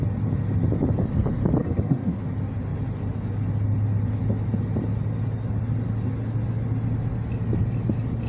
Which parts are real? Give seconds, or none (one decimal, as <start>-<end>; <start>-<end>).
0.0-1.6; 2.2-8.3